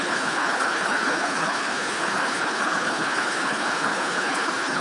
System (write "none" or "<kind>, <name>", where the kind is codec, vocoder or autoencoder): codec, HILCodec